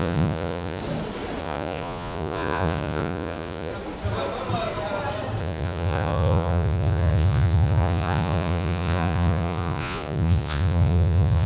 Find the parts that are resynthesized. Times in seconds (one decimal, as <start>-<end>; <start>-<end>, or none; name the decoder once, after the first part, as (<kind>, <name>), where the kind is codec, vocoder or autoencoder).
0.0-0.8 (vocoder, Vocos); 1.4-3.7; 5.4-11.5